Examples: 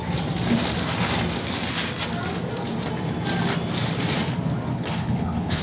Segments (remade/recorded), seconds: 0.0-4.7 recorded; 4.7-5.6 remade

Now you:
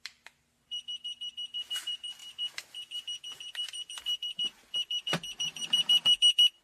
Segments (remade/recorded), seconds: 0.0-6.6 remade

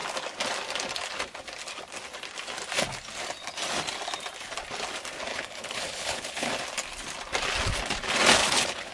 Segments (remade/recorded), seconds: 0.0-5.3 recorded; 5.3-6.5 remade; 6.5-8.4 recorded; 8.4-8.9 remade

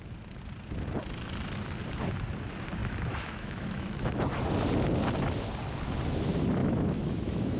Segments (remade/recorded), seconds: 0.0-2.8 recorded; 2.8-4.2 remade; 4.2-6.6 recorded; 6.6-7.6 remade

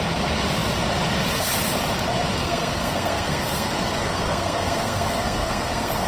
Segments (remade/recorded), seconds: 0.0-2.4 recorded; 2.4-6.1 remade

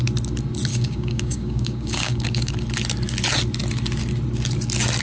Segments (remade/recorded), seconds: 0.0-0.7 recorded; 0.7-2.5 remade; 2.5-5.0 recorded

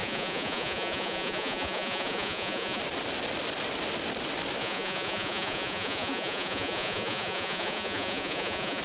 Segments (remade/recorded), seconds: 0.0-2.8 remade; 2.8-4.6 recorded; 4.6-8.8 remade